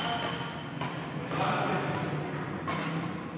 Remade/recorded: recorded